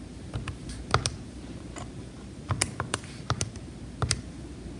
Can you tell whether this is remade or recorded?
remade